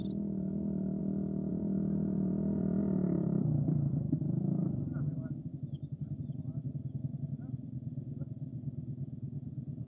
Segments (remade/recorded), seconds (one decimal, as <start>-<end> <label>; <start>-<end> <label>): 0.0-1.5 recorded; 1.5-2.8 remade; 2.8-8.5 recorded; 8.5-9.9 remade